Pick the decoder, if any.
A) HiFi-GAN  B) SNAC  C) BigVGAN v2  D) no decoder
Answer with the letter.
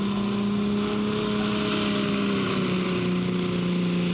D